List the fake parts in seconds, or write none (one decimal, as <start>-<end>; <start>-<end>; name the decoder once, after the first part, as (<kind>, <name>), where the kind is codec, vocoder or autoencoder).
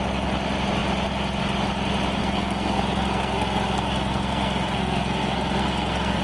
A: 2.2-6.2 (codec, SNAC)